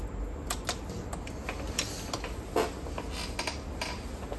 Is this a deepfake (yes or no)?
no